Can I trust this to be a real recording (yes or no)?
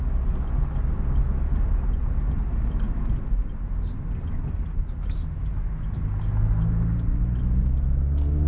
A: yes